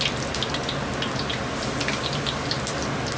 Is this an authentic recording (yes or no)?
yes